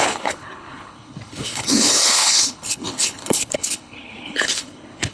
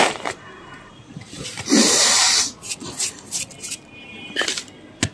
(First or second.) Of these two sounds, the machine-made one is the first